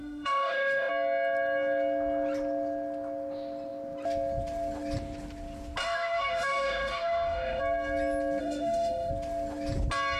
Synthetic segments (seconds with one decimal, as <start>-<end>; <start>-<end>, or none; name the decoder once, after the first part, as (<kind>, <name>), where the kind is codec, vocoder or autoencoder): 0.0-0.9 (autoencoder, DAC-VAE); 5.8-7.6; 8.4-9.1